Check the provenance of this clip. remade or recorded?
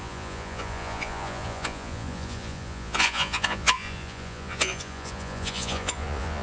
remade